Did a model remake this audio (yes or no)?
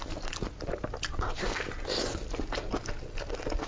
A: no